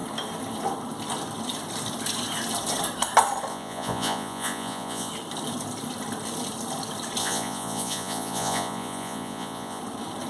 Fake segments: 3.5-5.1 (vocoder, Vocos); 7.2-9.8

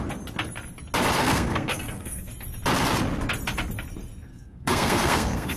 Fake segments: 1.2-2.3 (codec, SNAC); 4.3-5.6

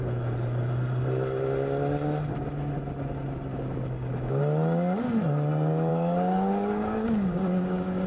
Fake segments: 3.5-4.4 (codec, DAC); 5.9-8.1

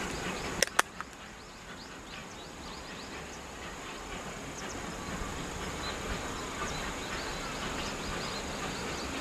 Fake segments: none

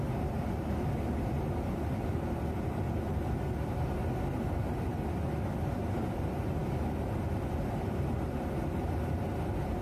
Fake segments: none